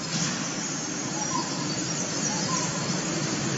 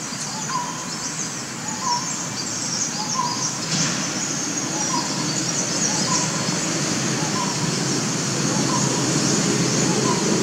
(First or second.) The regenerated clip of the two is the first